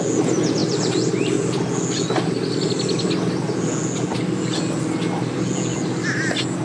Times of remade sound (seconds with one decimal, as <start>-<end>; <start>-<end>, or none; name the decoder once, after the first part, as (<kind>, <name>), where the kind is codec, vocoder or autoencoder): none